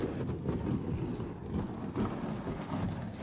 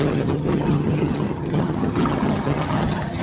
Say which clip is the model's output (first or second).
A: second